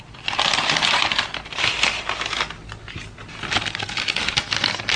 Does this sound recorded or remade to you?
recorded